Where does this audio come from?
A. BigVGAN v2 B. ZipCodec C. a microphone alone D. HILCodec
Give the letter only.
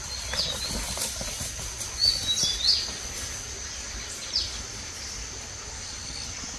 C